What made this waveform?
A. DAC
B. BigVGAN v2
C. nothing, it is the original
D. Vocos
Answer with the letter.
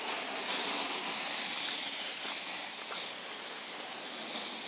C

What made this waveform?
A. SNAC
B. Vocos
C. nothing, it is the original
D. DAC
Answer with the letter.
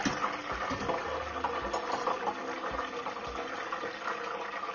C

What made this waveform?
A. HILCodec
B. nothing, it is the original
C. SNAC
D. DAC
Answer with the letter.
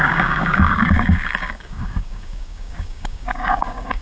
D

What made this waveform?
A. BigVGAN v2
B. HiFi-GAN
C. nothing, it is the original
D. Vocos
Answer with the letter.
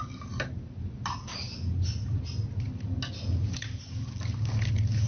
C